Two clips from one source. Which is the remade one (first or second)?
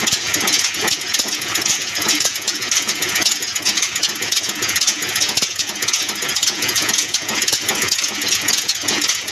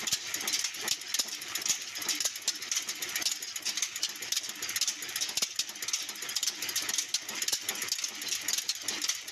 first